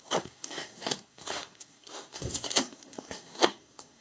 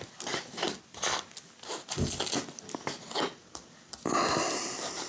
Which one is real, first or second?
second